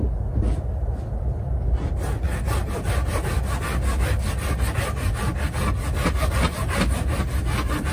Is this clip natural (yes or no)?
yes